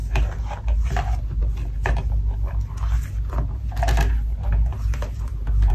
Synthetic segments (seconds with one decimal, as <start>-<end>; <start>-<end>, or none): none